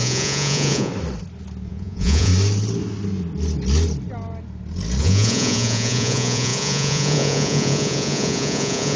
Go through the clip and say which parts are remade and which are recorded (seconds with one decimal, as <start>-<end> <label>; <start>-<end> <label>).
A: 0.0-0.9 remade; 0.9-1.7 recorded; 1.7-2.3 remade; 2.3-5.0 recorded; 5.0-9.0 remade

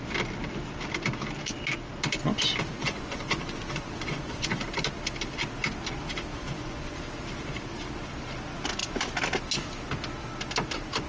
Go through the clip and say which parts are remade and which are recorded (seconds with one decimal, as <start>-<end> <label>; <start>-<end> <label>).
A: 0.0-2.8 recorded; 2.8-4.5 remade; 4.5-6.3 recorded; 6.3-7.0 remade; 7.0-11.1 recorded

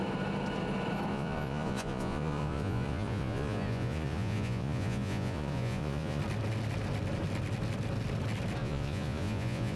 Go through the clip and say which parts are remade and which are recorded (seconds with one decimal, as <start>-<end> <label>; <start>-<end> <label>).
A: 0.0-1.1 recorded; 1.1-6.2 remade; 6.2-8.6 recorded; 8.6-9.8 remade